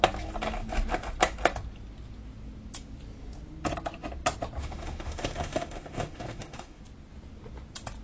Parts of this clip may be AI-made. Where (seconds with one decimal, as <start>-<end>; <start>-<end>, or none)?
4.6-6.8